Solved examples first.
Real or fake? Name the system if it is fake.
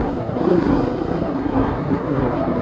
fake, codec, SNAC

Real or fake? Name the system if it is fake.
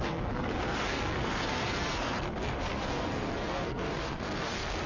fake, codec, SNAC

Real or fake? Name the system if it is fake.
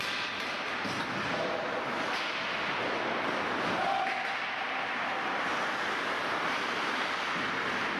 real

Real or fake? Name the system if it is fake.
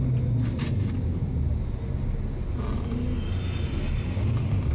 real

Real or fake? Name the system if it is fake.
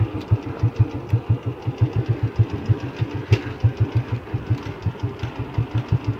real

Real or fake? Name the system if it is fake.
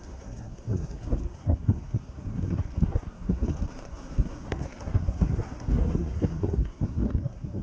fake, codec, SNAC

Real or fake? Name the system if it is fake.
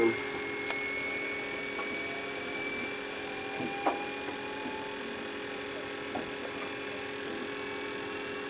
real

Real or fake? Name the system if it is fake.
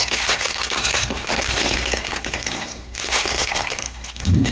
fake, codec, SNAC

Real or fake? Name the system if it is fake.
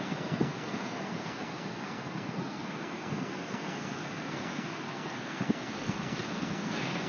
fake, codec, SNAC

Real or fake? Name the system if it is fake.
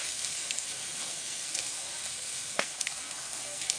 fake, codec, SNAC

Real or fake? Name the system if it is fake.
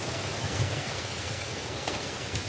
fake, codec, SNAC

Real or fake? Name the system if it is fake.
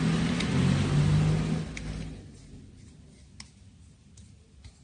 real